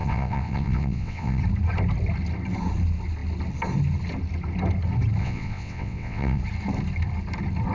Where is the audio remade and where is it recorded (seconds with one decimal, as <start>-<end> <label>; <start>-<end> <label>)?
0.0-1.4 remade; 1.4-5.2 recorded; 5.2-6.4 remade; 6.4-7.7 recorded